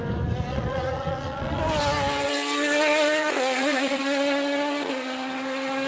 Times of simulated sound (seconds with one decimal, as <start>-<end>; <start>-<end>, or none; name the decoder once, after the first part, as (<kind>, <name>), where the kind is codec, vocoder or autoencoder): 0.5-1.6 (vocoder, Vocos); 3.2-4.0